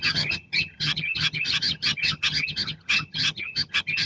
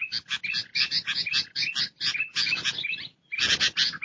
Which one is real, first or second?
second